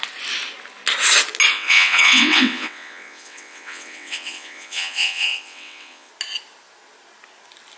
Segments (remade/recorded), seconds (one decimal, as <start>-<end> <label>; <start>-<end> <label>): 0.0-1.5 recorded; 1.5-6.1 remade; 6.1-7.8 recorded